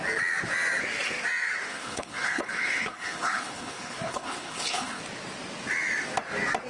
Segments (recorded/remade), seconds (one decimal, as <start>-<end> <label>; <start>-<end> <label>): 0.0-1.7 recorded; 1.7-5.0 remade; 5.0-6.7 recorded